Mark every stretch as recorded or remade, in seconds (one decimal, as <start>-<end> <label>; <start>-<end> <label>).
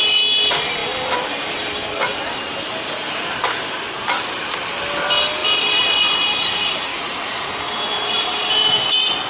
0.0-6.9 recorded; 6.9-7.5 remade; 7.5-9.3 recorded